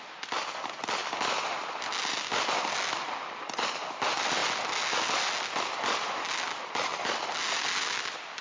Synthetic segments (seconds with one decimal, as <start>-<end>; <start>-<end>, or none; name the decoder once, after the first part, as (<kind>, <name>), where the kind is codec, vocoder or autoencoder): none